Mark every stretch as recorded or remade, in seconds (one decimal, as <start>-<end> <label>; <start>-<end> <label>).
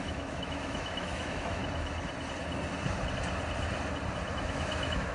0.0-1.6 remade; 1.6-4.3 recorded; 4.3-5.1 remade